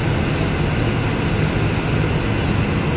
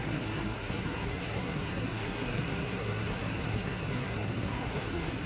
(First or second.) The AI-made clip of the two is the second